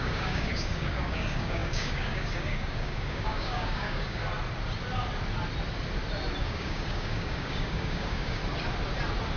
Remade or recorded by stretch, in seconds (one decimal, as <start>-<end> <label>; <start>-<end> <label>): 0.0-4.2 remade; 4.2-6.4 recorded; 6.4-8.4 remade; 8.4-9.4 recorded